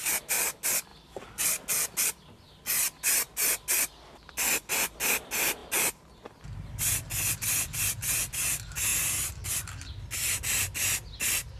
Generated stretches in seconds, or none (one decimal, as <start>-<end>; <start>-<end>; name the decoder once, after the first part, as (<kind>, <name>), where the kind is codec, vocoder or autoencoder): none